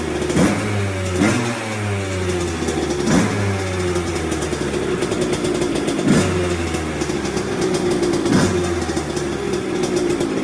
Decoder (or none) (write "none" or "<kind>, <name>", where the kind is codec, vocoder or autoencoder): none